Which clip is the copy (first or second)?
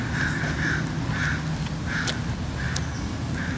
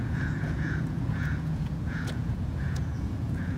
second